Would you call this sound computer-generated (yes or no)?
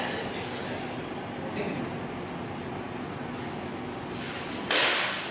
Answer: no